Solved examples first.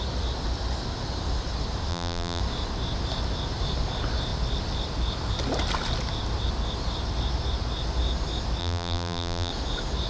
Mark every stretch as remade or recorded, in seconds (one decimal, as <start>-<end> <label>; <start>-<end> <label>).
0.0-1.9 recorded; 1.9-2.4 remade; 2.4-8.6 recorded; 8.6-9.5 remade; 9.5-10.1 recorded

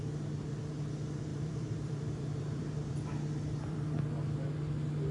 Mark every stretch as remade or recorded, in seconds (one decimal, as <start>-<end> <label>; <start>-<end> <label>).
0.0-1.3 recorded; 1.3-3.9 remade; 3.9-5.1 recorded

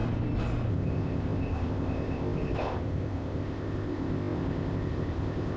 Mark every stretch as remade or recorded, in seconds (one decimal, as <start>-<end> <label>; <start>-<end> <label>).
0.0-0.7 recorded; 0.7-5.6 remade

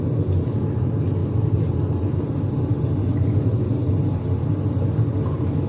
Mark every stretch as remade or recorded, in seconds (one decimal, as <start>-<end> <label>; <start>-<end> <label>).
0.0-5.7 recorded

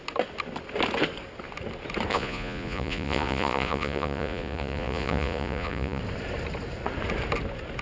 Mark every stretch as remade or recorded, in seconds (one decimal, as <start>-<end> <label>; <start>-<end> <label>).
0.0-2.1 recorded; 2.1-6.0 remade; 6.0-7.8 recorded

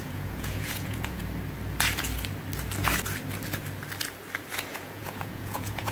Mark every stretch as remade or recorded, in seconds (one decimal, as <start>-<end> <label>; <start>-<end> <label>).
0.0-1.2 remade; 1.2-4.7 recorded; 4.7-5.9 remade